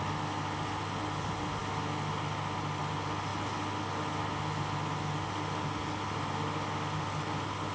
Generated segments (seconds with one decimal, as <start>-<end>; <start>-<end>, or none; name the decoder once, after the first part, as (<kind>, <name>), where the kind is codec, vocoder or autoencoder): none